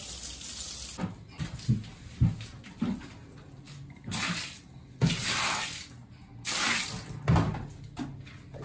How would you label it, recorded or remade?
recorded